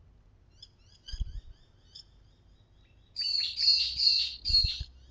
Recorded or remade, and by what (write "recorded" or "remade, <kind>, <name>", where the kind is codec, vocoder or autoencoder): recorded